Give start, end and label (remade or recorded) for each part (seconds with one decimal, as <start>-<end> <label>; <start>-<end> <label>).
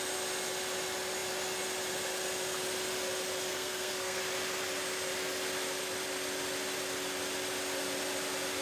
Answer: 0.0-3.5 recorded; 3.5-4.2 remade; 4.2-8.6 recorded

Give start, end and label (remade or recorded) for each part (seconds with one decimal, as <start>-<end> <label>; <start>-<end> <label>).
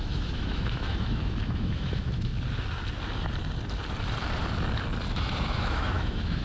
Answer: 0.0-2.3 remade; 2.3-5.1 recorded; 5.1-6.4 remade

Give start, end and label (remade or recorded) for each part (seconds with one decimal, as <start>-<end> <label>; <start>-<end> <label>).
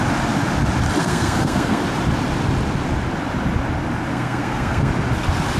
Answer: 0.0-1.0 recorded; 1.0-1.8 remade; 1.8-4.1 recorded; 4.1-4.9 remade; 4.9-5.6 recorded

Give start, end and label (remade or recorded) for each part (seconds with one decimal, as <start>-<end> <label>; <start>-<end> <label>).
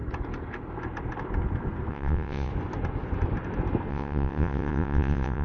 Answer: 0.0-1.9 recorded; 1.9-2.5 remade; 2.5-3.9 recorded; 3.9-5.4 remade